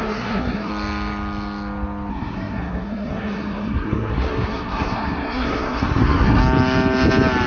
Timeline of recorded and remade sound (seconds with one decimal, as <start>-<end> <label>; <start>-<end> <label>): 0.0-0.7 remade; 0.7-2.1 recorded; 2.1-6.4 remade; 6.4-7.5 recorded